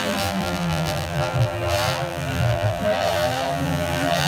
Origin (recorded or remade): remade